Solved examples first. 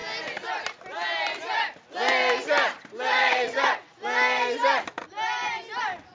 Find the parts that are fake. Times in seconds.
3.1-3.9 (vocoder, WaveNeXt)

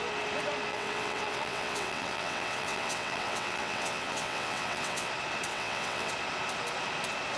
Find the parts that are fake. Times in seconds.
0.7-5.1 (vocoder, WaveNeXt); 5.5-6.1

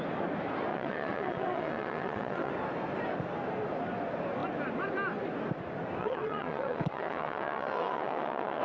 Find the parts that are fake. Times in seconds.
0.7-2.5 (vocoder, WaveNeXt); 6.0-8.6

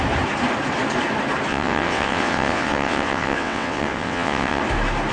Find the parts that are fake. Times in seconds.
1.5-4.6 (vocoder, WaveNeXt)

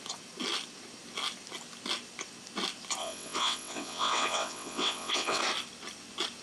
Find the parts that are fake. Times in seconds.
3.0-5.4 (vocoder, WaveNeXt)

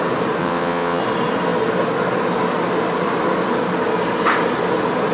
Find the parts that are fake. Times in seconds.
0.4-1.0 (vocoder, WaveNeXt)